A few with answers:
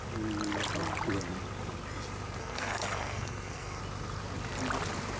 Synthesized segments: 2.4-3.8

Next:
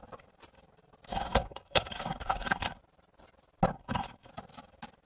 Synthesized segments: 1.1-2.8; 3.7-4.3

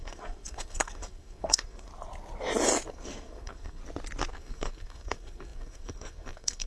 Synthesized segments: 0.0-1.9; 2.9-3.8; 4.3-6.7

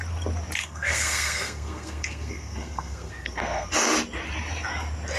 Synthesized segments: 0.6-3.7

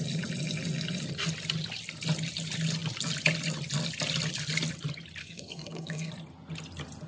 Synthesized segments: 5.2-6.1